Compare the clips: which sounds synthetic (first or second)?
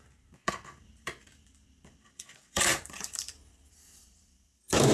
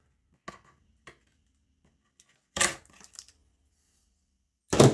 first